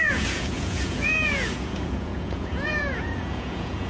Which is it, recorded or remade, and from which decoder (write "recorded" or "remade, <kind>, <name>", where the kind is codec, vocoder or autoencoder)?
remade, vocoder, Vocos